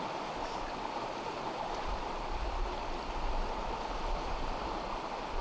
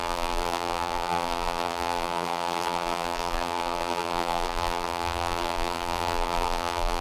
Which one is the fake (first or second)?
second